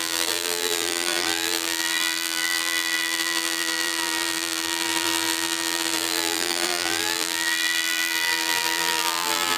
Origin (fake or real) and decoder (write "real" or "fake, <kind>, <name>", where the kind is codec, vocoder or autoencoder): fake, vocoder, BigVGAN v2